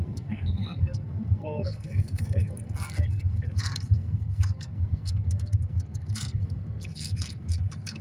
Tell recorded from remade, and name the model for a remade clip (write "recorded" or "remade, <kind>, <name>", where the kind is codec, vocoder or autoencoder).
remade, codec, SNAC